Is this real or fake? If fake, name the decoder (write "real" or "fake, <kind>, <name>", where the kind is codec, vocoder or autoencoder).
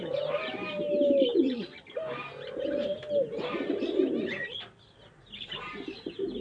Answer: real